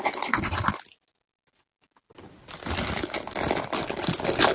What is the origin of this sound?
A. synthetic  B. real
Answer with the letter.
B